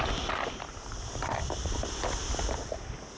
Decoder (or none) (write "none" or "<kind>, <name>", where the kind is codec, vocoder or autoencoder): none